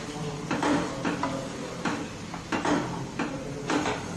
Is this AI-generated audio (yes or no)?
no